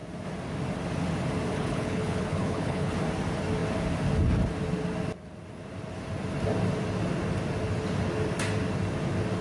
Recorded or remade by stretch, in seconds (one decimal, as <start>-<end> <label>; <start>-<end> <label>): 0.0-1.5 recorded; 1.5-2.9 remade; 2.9-9.4 recorded